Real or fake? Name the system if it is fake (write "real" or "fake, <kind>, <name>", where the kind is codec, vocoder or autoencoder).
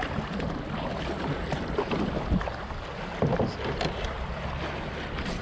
real